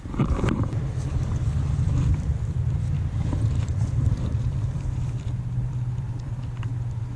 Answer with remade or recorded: remade